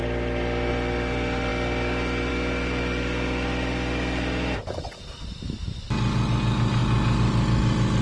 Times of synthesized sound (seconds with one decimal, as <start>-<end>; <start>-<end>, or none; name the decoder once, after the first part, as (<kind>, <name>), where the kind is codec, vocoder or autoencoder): none